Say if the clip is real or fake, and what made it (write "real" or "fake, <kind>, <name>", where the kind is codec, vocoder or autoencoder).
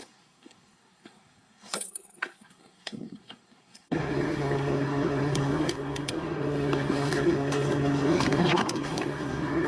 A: fake, codec, SNAC